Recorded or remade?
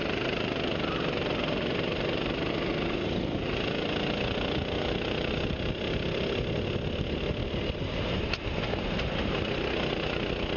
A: recorded